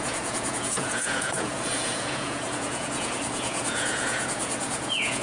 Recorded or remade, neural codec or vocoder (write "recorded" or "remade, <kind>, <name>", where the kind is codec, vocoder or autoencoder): remade, vocoder, Vocos